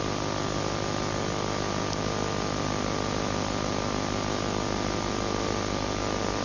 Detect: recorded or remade recorded